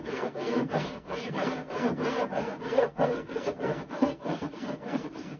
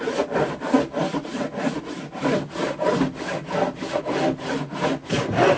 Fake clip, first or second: first